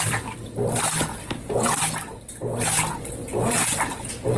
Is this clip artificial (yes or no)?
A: no